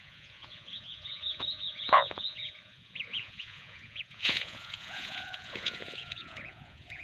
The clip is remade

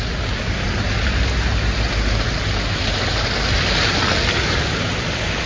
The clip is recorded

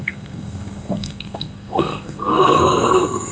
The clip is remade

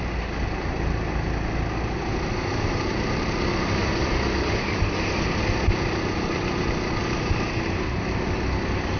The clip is recorded